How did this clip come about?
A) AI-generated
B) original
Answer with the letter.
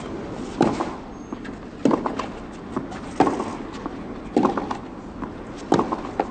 B